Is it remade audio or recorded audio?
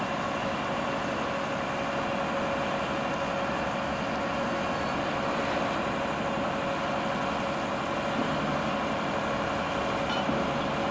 recorded